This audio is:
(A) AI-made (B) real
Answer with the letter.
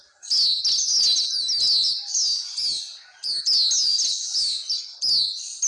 B